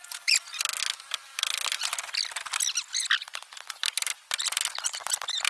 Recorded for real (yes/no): yes